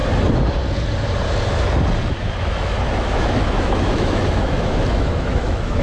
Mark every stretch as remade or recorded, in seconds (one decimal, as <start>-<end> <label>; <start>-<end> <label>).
0.0-2.4 recorded; 2.4-5.8 remade